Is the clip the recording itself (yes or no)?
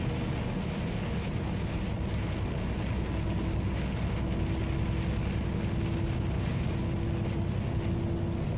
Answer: yes